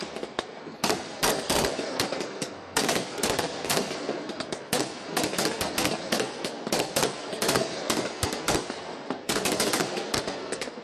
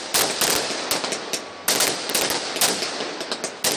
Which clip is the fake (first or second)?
first